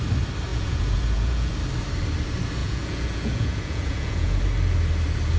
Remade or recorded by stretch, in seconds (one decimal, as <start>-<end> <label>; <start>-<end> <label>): 0.0-0.5 recorded; 0.5-1.5 remade; 1.5-2.6 recorded; 2.6-4.4 remade; 4.4-5.4 recorded